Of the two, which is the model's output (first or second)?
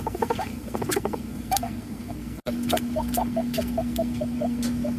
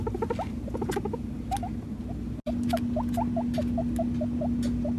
first